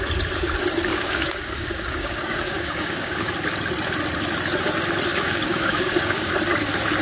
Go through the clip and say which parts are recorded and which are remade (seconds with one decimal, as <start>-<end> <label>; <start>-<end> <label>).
0.0-0.9 recorded; 0.9-3.3 remade; 3.3-5.1 recorded; 5.1-6.3 remade; 6.3-7.0 recorded